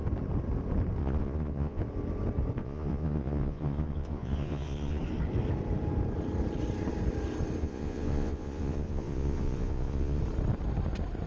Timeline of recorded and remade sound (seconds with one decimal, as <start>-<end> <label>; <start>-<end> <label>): 0.0-1.0 recorded; 1.0-1.8 remade; 1.8-2.6 recorded; 2.6-5.0 remade; 5.0-7.6 recorded; 7.6-10.2 remade; 10.2-11.3 recorded